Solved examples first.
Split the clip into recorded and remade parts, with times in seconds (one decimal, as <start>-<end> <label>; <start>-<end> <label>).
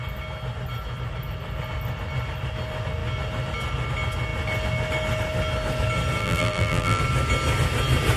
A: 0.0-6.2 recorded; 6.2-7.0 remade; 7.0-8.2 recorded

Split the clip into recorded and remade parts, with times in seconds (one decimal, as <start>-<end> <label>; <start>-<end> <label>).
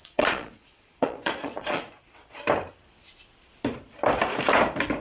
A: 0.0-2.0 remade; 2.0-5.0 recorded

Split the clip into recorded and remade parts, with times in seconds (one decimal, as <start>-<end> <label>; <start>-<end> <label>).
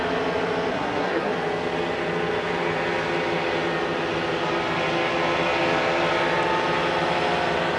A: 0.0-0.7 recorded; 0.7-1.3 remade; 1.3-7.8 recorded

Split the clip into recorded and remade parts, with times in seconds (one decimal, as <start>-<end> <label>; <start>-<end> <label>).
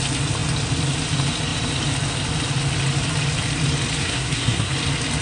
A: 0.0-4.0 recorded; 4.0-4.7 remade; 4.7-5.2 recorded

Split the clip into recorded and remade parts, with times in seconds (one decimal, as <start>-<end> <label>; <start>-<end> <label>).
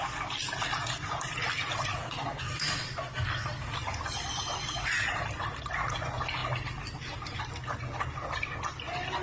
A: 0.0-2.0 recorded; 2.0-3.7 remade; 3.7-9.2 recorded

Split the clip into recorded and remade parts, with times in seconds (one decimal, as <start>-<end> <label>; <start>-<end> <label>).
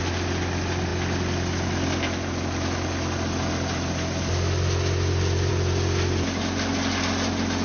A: 0.0-7.6 recorded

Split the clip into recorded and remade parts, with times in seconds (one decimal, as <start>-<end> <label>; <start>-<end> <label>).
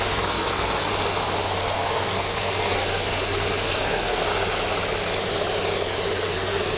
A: 0.0-0.9 remade; 0.9-1.6 recorded; 1.6-4.3 remade; 4.3-6.3 recorded; 6.3-6.8 remade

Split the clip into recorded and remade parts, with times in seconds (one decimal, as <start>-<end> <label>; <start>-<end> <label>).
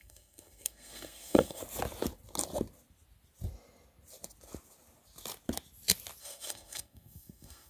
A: 0.0-1.6 remade; 1.6-6.2 recorded; 6.2-7.7 remade